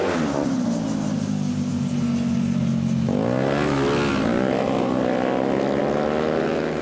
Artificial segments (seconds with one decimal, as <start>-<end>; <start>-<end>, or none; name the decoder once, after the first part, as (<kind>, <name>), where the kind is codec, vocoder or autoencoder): none